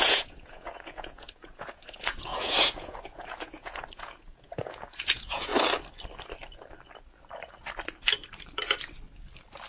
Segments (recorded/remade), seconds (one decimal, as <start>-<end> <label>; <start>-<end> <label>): 0.0-5.5 remade; 5.5-9.7 recorded

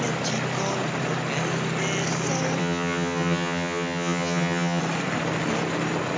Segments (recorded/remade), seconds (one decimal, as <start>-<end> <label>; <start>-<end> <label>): 0.0-2.6 recorded; 2.6-4.8 remade; 4.8-6.2 recorded

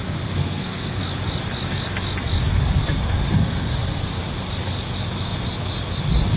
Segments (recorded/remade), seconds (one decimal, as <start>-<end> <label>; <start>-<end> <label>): 0.0-0.4 recorded; 0.4-1.0 remade; 1.0-2.8 recorded; 2.8-4.2 remade; 4.2-6.4 recorded

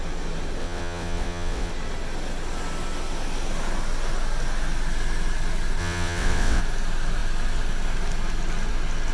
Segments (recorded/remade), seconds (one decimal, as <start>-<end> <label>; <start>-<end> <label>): 0.0-0.6 recorded; 0.6-1.7 remade; 1.7-5.8 recorded; 5.8-6.6 remade; 6.6-9.1 recorded

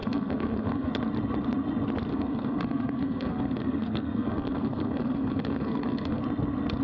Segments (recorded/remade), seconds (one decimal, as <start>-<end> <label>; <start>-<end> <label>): 0.0-0.9 remade; 0.9-2.1 recorded; 2.1-6.2 remade; 6.2-6.8 recorded

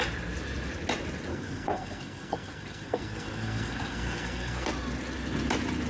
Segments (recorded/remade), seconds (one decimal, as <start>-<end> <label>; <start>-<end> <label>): 0.0-1.3 recorded; 1.3-4.7 remade; 4.7-5.9 recorded